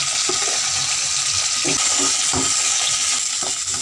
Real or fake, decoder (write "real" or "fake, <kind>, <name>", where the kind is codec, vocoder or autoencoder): real